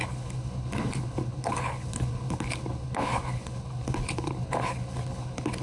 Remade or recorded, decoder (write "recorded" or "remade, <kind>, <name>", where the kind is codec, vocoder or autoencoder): remade, codec, HILCodec